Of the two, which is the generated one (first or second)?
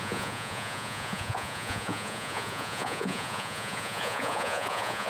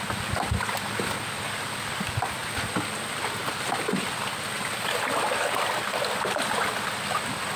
first